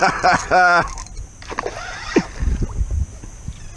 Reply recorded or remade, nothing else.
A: recorded